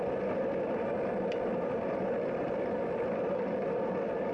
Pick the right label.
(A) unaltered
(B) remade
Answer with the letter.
A